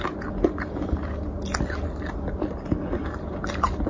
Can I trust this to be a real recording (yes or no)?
yes